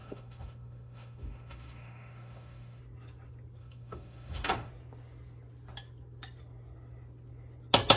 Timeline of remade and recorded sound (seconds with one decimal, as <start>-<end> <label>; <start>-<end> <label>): 0.0-2.8 remade; 2.8-3.6 recorded; 3.6-4.7 remade; 4.7-8.0 recorded